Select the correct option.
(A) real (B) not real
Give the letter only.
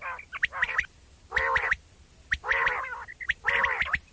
B